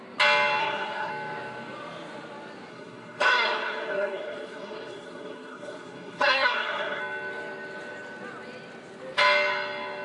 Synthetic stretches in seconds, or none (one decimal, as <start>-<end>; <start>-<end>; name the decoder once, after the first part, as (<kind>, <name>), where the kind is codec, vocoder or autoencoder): 0.6-1.1 (codec, SNAC); 2.7-7.0